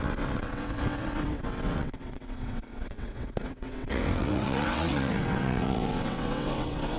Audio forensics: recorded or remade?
remade